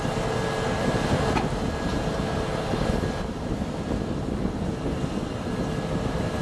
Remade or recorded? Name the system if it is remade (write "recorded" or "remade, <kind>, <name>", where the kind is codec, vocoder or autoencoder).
recorded